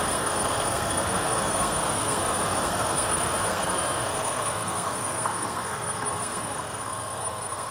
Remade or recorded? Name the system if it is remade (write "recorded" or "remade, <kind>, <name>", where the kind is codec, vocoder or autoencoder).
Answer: remade, codec, SNAC